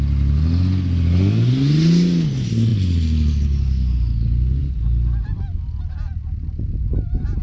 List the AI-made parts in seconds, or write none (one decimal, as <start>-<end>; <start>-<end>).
none